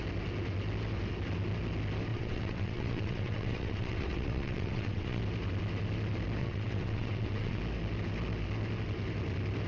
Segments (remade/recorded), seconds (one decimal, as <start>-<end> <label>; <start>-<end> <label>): 0.0-2.1 recorded; 2.1-5.2 remade; 5.2-6.4 recorded; 6.4-7.6 remade; 7.6-9.7 recorded